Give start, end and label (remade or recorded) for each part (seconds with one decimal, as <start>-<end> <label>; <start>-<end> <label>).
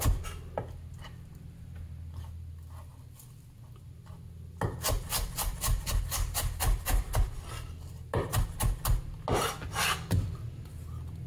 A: 0.0-11.3 recorded